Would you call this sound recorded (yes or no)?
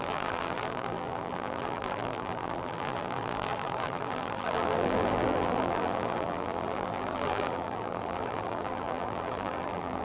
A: no